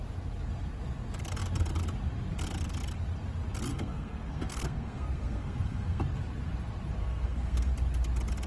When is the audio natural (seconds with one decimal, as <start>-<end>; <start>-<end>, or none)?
0.0-3.7; 6.0-7.0; 7.7-8.5